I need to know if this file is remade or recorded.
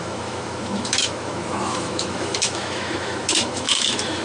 remade